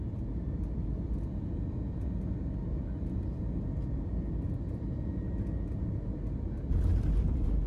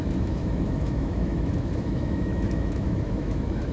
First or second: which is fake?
second